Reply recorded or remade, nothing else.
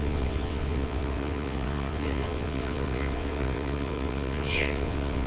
remade